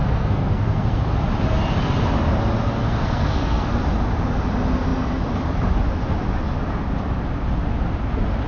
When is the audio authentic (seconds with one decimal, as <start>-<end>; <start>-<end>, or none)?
1.0-2.8; 3.7-8.5